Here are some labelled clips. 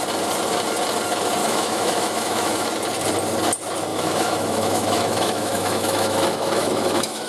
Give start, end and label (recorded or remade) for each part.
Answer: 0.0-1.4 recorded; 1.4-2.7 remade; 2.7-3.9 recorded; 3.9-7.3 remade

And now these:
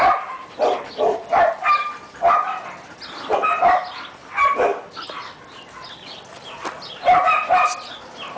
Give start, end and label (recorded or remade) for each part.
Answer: 0.0-8.4 recorded

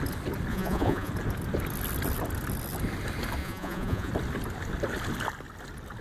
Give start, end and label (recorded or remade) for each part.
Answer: 0.0-0.5 recorded; 0.5-1.1 remade; 1.1-3.4 recorded; 3.4-4.1 remade; 4.1-6.0 recorded

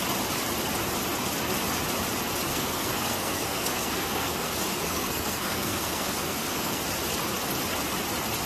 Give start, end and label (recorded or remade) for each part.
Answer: 0.0-2.5 recorded; 2.5-6.8 remade; 6.8-8.5 recorded

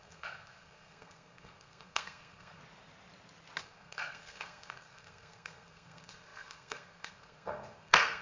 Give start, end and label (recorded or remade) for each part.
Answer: 0.0-2.6 remade; 2.6-3.6 recorded; 3.6-8.2 remade